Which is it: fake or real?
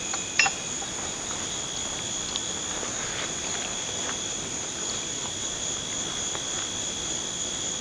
real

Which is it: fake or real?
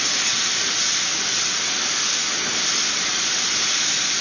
real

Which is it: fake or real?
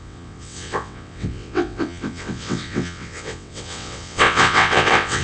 fake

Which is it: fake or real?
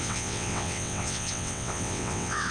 fake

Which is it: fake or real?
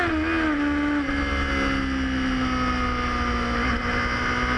real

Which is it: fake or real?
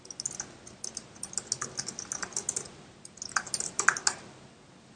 real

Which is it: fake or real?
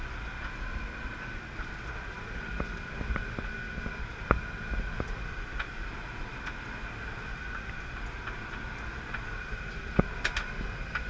real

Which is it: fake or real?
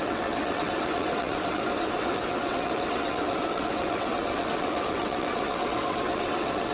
fake